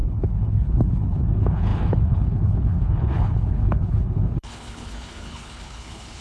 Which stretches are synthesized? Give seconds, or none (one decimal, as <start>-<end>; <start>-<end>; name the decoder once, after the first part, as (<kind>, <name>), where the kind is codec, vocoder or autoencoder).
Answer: 0.0-6.2 (codec, HILCodec)